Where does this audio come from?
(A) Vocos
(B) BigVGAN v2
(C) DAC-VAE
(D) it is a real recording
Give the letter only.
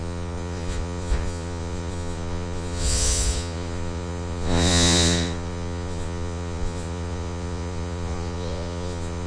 A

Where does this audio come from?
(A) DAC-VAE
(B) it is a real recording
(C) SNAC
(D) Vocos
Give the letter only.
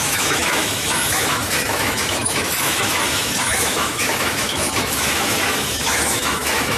A